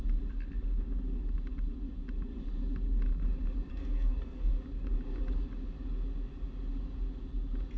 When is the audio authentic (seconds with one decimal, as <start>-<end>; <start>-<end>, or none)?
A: 0.0-3.7; 4.5-7.8